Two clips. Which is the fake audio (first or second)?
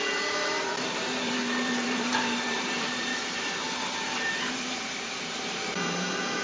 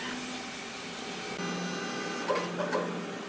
first